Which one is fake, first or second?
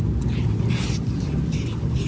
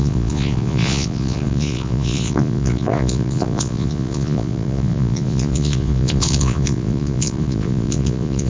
second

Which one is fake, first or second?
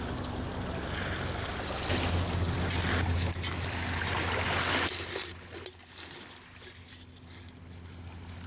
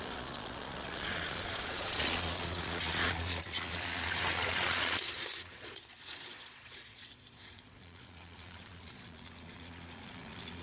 second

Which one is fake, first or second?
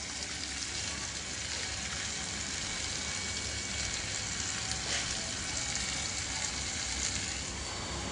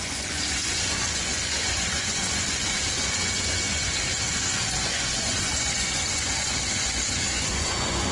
second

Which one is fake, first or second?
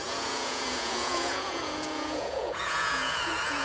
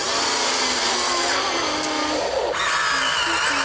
first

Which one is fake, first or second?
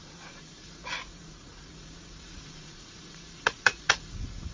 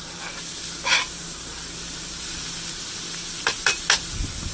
first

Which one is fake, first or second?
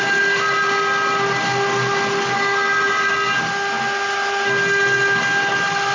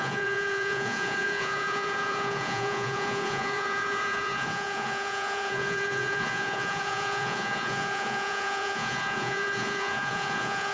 second